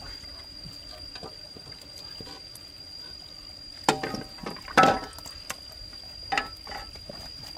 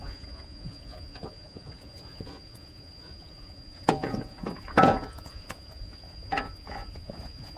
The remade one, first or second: second